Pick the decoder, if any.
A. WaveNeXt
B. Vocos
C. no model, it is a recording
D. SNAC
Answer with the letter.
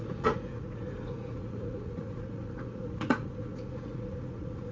B